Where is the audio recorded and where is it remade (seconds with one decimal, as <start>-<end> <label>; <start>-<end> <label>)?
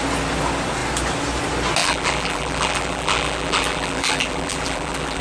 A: 0.0-1.8 recorded; 1.8-5.2 remade